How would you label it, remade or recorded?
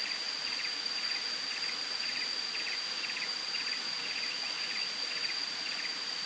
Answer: remade